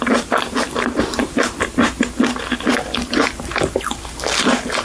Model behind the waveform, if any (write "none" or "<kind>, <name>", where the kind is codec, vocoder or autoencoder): vocoder, BigVGAN v2